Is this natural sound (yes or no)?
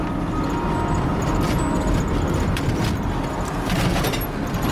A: yes